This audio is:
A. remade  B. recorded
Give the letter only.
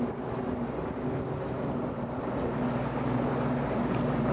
B